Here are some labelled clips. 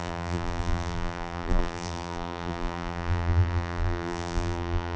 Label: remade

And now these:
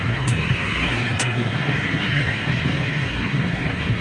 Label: remade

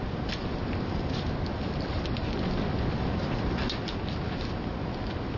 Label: recorded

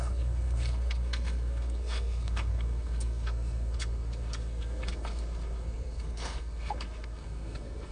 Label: remade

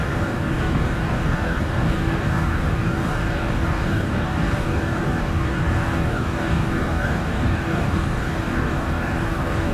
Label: remade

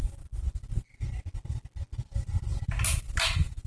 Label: recorded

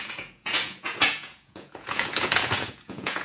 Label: remade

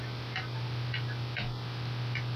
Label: recorded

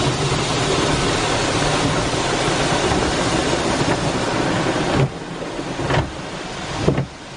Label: recorded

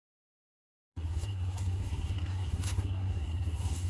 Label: remade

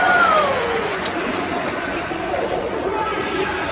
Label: remade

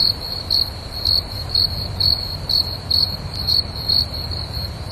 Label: remade